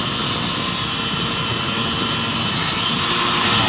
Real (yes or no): yes